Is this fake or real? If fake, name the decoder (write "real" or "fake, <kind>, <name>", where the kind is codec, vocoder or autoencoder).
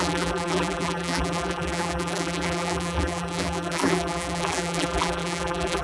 fake, vocoder, BigVGAN v2